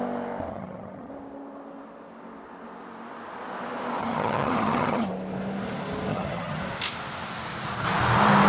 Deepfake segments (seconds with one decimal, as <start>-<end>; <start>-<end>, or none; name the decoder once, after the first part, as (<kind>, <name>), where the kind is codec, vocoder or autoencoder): 0.5-1.1 (vocoder, HiFi-GAN); 4.0-5.1; 6.1-6.6